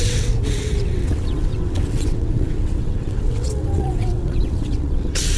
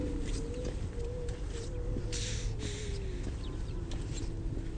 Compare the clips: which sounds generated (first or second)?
first